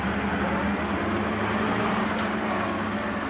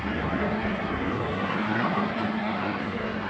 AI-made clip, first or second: second